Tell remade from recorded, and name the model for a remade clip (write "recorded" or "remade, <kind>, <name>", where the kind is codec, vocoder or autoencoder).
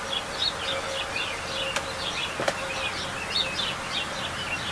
recorded